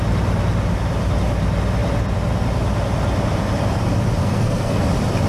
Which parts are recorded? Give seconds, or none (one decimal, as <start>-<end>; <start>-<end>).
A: 0.0-4.2; 4.8-5.3